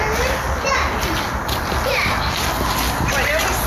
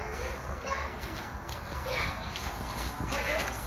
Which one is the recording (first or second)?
first